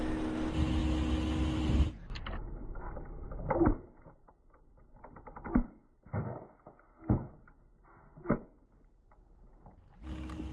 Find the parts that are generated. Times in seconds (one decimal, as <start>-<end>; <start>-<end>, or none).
none

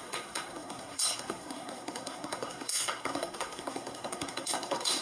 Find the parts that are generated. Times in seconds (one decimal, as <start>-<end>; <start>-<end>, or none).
0.0-5.0

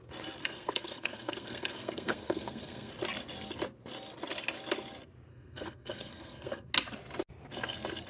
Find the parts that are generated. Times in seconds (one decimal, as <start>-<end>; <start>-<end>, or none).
0.4-2.9; 5.3-6.7